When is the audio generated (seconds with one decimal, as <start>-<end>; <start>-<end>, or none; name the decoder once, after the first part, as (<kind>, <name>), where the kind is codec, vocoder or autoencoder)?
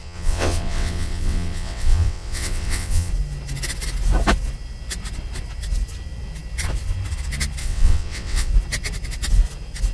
0.0-3.1 (vocoder, WaveNeXt); 7.6-8.5